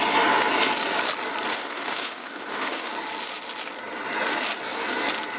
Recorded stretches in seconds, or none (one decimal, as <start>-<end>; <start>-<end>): 0.0-1.5; 2.9-5.4